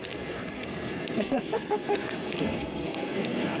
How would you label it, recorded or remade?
remade